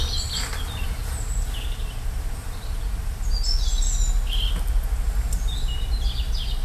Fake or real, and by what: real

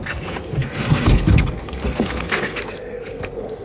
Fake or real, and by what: fake, codec, SNAC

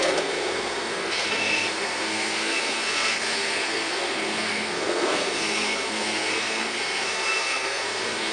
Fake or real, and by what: fake, codec, SNAC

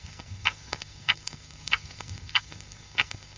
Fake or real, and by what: fake, codec, SNAC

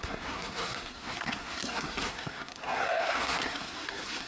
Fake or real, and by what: fake, codec, SNAC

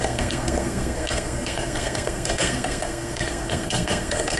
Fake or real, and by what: fake, codec, SNAC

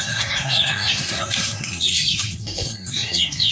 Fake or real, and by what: fake, codec, SNAC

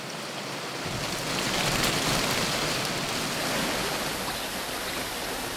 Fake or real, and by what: real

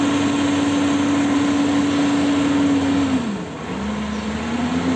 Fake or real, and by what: real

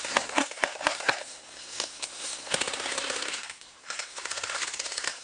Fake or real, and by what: fake, codec, SNAC